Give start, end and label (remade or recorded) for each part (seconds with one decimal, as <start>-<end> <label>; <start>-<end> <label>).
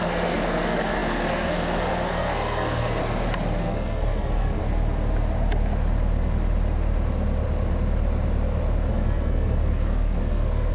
0.0-3.0 remade; 3.0-3.6 recorded; 3.6-4.6 remade; 4.6-8.9 recorded; 8.9-10.7 remade